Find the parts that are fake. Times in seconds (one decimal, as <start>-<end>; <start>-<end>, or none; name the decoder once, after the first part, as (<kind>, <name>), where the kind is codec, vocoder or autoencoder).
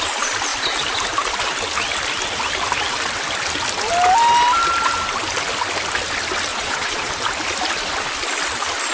6.5-7.1 (vocoder, Vocos)